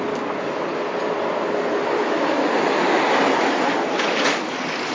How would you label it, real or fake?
real